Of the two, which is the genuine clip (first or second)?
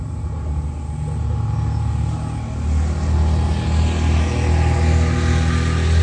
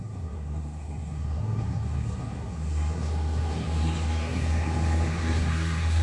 first